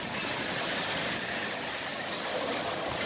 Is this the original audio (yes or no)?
yes